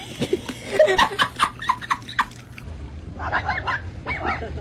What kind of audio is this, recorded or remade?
recorded